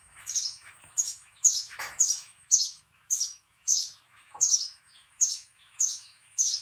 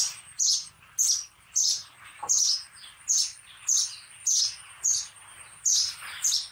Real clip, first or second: second